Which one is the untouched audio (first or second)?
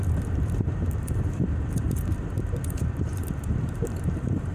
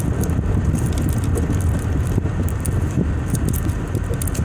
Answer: second